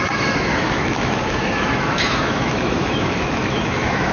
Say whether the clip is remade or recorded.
remade